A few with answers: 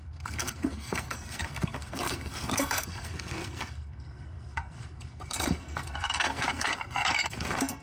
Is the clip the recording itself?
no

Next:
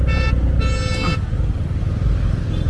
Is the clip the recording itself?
yes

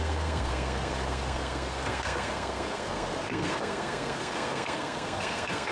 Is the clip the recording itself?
no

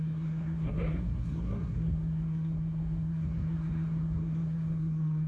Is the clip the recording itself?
no